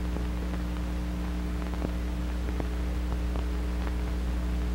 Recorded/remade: recorded